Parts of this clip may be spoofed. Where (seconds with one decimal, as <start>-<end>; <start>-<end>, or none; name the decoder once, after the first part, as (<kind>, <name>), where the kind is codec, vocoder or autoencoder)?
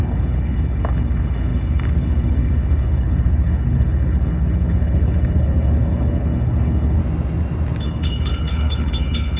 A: 0.0-7.0 (codec, HILCodec); 7.8-9.4